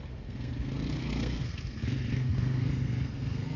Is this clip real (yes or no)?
no